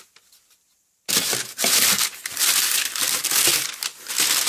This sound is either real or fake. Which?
real